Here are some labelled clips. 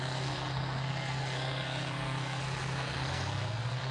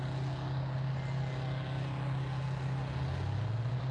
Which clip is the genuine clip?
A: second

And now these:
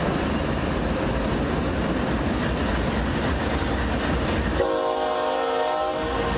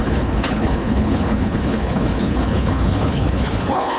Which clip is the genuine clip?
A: first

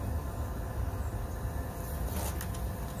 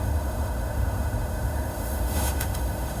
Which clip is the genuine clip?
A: first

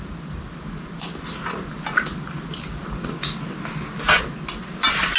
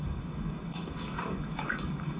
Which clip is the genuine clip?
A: first